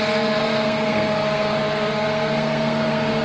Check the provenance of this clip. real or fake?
fake